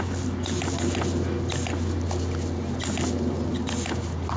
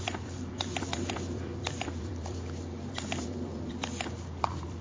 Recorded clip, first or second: first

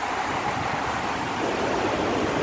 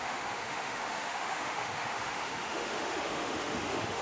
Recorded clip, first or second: first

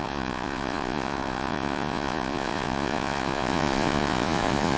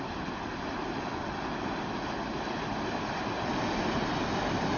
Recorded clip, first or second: second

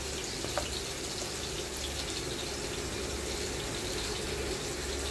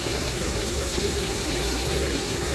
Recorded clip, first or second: first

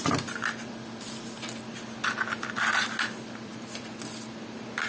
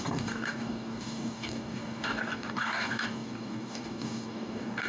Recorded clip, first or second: first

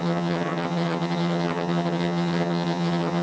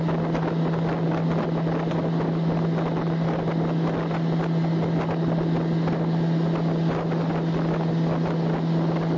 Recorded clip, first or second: second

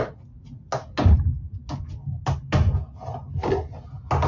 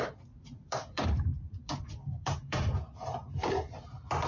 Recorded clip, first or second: first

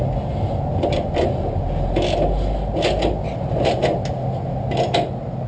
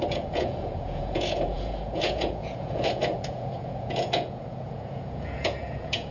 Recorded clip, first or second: first